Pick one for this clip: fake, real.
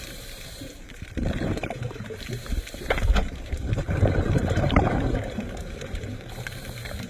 fake